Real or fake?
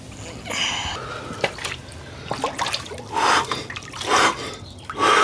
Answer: real